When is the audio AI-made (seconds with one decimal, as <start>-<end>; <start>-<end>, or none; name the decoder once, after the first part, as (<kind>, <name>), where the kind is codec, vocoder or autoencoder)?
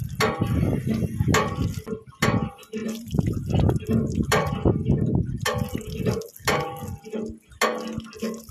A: 2.8-4.5 (vocoder, BigVGAN v2)